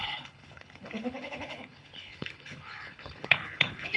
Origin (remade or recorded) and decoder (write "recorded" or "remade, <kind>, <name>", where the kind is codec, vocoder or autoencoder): remade, codec, HILCodec